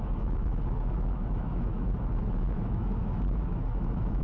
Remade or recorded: remade